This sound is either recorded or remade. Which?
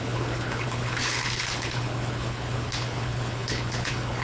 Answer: remade